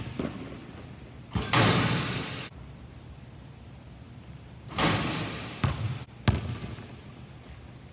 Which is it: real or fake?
real